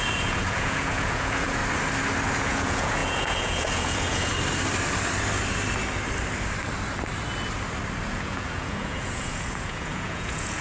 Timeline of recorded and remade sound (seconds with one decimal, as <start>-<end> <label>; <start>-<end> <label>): 0.0-1.6 remade; 1.6-2.3 recorded; 2.3-4.3 remade; 4.3-8.1 recorded; 8.1-10.6 remade